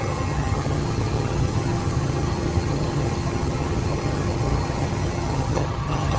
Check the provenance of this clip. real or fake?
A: fake